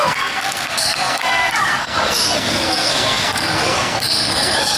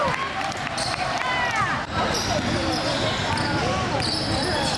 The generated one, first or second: first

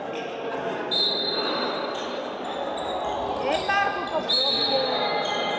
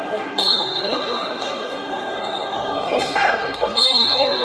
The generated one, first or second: second